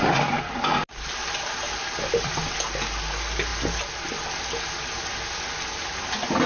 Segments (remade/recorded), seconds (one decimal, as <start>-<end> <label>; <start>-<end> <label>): 0.0-6.5 recorded